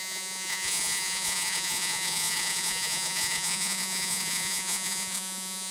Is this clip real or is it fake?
fake